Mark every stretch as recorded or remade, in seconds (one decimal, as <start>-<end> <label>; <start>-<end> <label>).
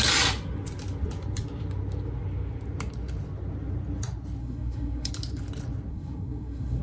0.0-4.4 recorded; 4.4-5.1 remade; 5.1-5.9 recorded; 5.9-6.8 remade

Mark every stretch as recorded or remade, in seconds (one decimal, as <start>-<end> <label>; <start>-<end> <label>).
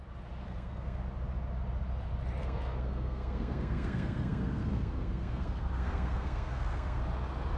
0.0-0.4 recorded; 0.4-1.0 remade; 1.0-2.4 recorded; 2.4-7.0 remade; 7.0-7.6 recorded